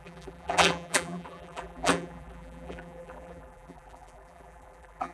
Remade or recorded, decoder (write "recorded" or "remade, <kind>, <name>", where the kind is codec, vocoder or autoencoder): remade, vocoder, BigVGAN v2